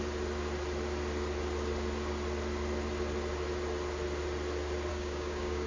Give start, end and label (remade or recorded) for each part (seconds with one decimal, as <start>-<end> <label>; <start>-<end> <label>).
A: 0.0-4.9 recorded; 4.9-5.7 remade